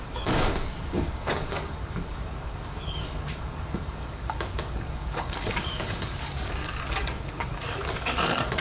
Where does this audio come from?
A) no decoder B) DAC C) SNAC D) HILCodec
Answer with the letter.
B